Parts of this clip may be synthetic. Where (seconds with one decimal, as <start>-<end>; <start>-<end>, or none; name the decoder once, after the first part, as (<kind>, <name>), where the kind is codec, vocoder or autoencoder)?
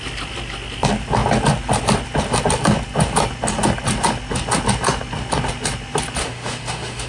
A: 6.2-7.1 (autoencoder, DAC-VAE)